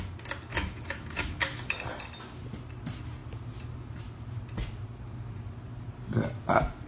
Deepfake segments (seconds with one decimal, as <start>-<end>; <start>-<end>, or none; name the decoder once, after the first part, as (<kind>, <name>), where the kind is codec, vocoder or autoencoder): 0.5-1.7 (autoencoder, DAC-VAE)